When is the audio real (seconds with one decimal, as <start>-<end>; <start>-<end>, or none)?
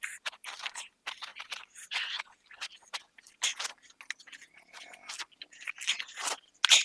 1.3-2.2; 3.5-6.8